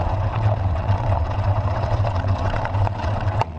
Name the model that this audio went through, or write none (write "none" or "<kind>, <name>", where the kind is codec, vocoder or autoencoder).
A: vocoder, WaveNeXt